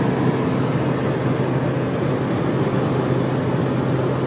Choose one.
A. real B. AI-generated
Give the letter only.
A